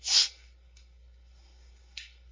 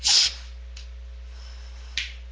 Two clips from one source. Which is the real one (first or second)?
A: second